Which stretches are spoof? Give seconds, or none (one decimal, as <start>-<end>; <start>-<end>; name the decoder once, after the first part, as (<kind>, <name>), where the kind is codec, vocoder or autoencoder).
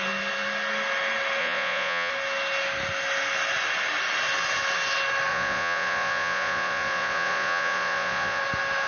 1.4-2.1 (vocoder, Vocos); 5.3-8.4